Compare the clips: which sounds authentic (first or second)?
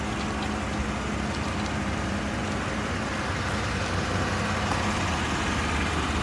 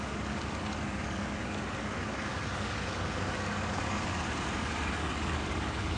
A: first